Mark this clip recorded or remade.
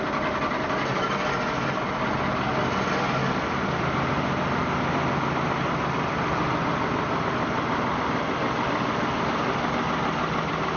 recorded